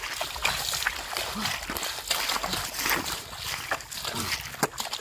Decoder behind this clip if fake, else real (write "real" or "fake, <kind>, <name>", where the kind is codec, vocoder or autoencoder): real